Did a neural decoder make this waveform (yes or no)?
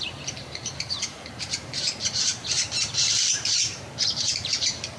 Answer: yes